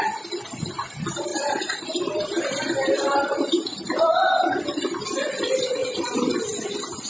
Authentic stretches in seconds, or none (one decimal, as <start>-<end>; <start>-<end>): 0.0-1.3; 4.6-5.8; 6.4-7.1